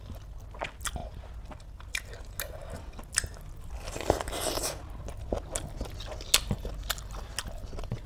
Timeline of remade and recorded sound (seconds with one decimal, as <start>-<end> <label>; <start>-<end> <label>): 0.0-8.1 recorded